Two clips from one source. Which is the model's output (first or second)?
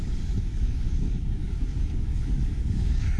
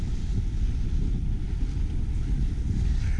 first